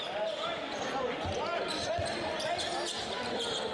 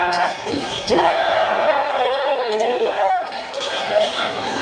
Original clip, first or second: first